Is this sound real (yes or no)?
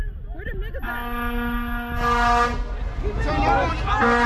yes